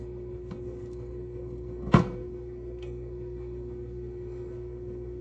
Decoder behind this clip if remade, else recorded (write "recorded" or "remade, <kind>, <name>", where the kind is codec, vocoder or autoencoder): remade, codec, SNAC